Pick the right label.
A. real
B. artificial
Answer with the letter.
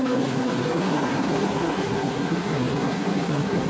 B